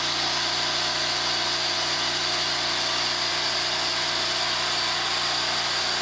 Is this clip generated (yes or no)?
no